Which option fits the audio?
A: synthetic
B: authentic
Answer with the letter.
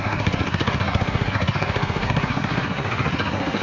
A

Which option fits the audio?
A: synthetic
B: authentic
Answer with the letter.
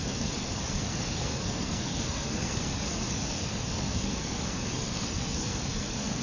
A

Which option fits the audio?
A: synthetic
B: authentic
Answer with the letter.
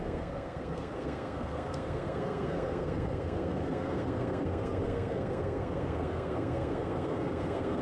A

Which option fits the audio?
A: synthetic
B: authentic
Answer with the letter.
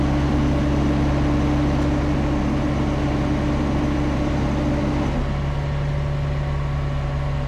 B